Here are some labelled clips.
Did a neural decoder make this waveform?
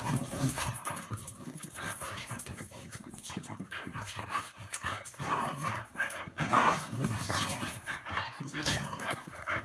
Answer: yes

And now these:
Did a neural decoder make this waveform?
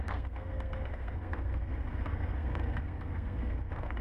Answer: yes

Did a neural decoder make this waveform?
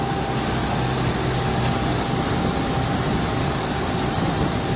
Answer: no